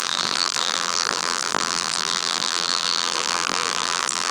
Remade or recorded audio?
remade